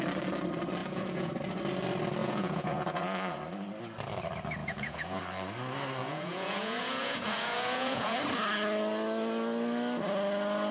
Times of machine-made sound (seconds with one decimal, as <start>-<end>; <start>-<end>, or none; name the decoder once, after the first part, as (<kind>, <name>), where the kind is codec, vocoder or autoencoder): 0.8-1.3 (vocoder, Vocos); 2.2-3.4; 4.6-5.2; 6.0-8.2